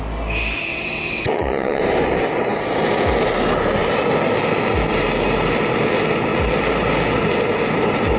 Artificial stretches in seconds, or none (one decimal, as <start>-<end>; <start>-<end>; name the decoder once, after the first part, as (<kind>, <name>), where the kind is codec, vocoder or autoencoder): 0.7-1.8 (vocoder, WaveNeXt)

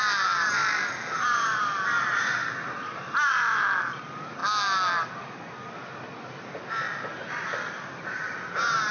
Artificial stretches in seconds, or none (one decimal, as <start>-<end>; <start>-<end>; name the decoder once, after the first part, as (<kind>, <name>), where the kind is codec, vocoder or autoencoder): none

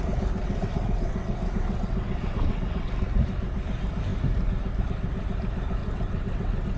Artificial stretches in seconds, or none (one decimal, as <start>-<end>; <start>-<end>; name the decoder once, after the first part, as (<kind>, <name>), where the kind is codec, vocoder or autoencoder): 0.4-2.9 (vocoder, WaveNeXt); 5.8-6.8

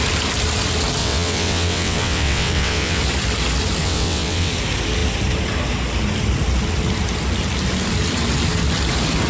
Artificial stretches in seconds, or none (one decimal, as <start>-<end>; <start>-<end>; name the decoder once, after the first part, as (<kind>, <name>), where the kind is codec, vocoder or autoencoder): 1.0-3.0 (vocoder, WaveNeXt); 3.8-4.5

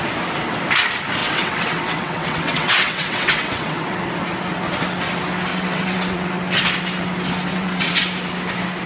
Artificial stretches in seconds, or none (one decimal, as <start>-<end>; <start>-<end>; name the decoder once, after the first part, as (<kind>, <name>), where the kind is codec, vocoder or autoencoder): 1.2-4.0 (vocoder, WaveNeXt); 5.5-6.3; 7.5-8.0